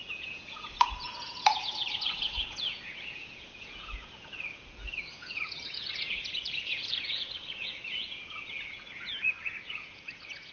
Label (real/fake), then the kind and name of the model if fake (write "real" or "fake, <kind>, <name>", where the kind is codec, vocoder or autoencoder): fake, vocoder, Vocos